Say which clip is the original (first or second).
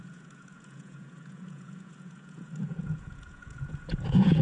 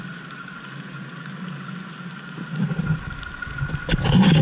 second